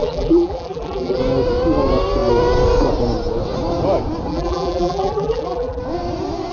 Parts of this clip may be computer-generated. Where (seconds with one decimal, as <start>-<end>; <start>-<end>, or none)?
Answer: 0.0-1.2; 4.3-5.8